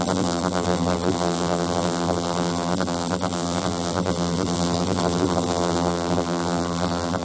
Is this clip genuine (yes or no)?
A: no